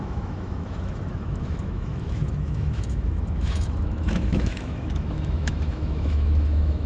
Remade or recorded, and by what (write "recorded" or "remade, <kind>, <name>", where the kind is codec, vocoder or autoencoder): remade, autoencoder, DAC-VAE